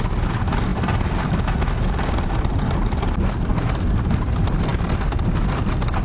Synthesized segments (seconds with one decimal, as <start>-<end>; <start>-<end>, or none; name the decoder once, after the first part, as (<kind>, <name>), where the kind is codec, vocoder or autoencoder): none